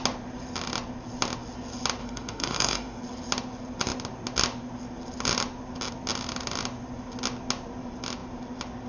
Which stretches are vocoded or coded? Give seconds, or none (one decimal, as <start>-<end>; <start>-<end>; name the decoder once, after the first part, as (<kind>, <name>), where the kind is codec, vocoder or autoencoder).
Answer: 2.0-3.0 (autoencoder, DAC-VAE)